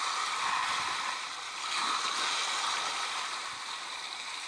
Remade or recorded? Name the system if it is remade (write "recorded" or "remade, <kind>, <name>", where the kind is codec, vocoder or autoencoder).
remade, vocoder, BigVGAN v2